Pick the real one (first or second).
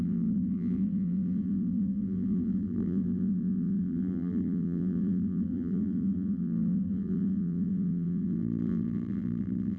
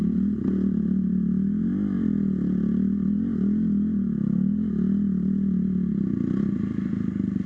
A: second